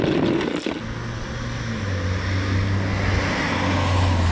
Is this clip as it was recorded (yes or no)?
yes